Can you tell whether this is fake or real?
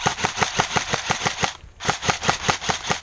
real